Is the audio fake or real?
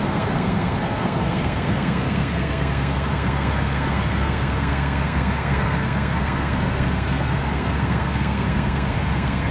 fake